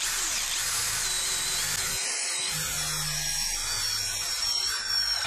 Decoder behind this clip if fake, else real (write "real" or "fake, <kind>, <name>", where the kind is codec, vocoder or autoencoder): real